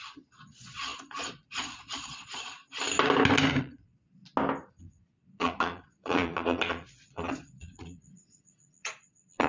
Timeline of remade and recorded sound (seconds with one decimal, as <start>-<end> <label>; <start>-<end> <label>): 0.0-2.6 remade; 2.6-3.6 recorded; 3.6-4.2 remade; 4.2-4.8 recorded; 4.8-9.5 remade